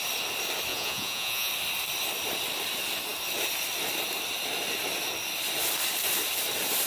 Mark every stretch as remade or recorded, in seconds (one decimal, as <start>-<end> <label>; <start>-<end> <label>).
0.0-0.7 recorded; 0.7-1.5 remade; 1.5-6.9 recorded